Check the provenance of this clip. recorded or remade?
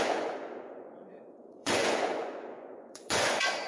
remade